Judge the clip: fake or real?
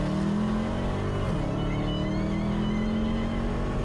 real